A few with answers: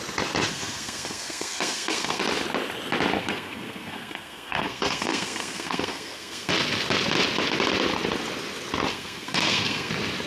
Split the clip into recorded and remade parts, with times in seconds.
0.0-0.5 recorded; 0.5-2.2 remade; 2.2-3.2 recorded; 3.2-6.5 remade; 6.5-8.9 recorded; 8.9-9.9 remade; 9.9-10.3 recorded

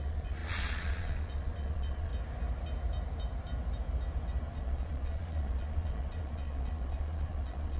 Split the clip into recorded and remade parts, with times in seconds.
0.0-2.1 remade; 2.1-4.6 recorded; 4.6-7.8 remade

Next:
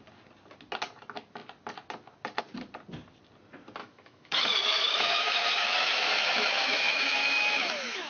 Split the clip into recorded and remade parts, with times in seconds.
0.0-3.8 recorded; 3.8-8.1 remade